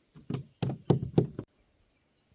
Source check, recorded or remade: recorded